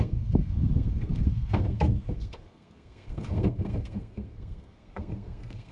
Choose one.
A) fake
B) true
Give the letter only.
A